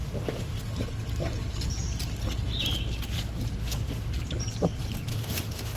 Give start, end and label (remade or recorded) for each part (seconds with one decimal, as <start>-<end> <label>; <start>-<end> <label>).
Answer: 0.0-0.6 remade; 0.6-3.6 recorded; 3.6-4.1 remade; 4.1-5.1 recorded; 5.1-5.8 remade

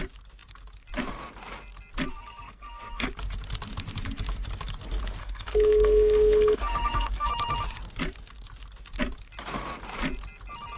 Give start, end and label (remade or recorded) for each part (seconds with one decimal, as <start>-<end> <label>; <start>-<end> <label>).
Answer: 0.0-2.1 recorded; 2.1-3.1 remade; 3.1-5.2 recorded; 5.2-7.3 remade; 7.3-10.8 recorded

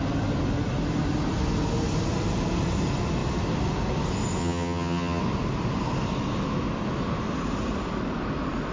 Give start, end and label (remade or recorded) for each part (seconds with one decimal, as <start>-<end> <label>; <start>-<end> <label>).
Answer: 0.0-4.4 recorded; 4.4-5.2 remade; 5.2-8.7 recorded